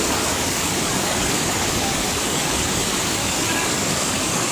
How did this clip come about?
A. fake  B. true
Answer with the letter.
A